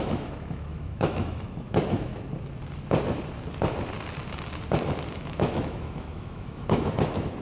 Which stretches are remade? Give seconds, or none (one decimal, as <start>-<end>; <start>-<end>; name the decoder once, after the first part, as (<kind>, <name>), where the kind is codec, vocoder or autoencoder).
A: 0.0-2.1 (autoencoder, DAC-VAE); 5.2-7.4